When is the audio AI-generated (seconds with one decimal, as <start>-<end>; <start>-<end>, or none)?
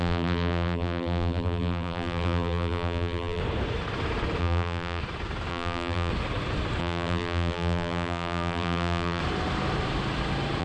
0.0-3.4; 4.4-5.0; 5.5-6.1; 6.8-9.2